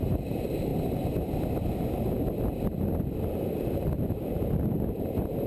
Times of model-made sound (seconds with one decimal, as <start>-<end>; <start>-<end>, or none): 0.0-0.7; 4.0-5.5